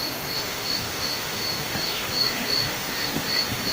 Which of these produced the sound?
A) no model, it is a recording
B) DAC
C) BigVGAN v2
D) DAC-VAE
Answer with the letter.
D